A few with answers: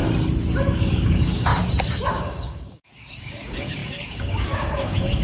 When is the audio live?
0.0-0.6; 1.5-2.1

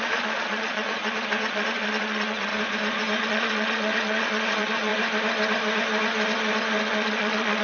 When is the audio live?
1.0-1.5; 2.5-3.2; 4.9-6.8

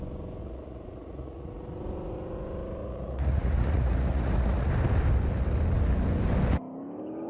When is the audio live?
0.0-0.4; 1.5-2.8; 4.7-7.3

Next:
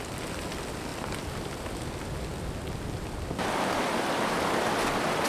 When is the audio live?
0.0-0.9; 1.9-5.3